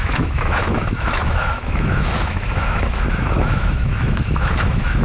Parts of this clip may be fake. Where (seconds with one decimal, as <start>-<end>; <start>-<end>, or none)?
0.0-5.0